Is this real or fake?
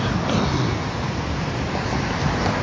real